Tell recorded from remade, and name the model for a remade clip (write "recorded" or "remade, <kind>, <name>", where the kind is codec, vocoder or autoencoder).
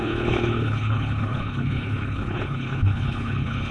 remade, codec, HILCodec